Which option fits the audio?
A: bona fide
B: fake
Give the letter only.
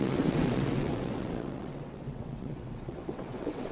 B